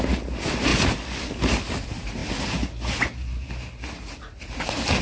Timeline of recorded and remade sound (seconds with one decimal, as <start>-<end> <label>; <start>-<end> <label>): 0.0-5.0 recorded